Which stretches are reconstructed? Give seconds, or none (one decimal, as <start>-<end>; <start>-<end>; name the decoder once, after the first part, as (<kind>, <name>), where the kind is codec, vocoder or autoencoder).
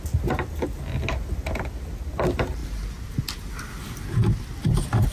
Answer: none